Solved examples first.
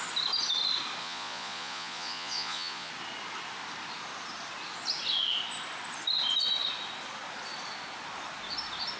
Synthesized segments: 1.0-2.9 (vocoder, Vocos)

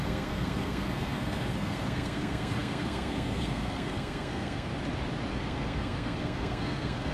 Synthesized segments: 0.0-4.7 (codec, SNAC); 5.3-7.1